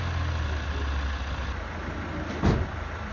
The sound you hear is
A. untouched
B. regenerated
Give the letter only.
A